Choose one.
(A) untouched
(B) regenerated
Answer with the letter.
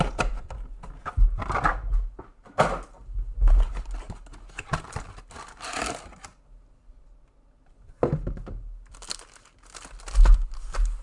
A